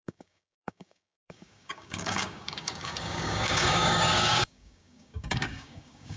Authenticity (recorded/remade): remade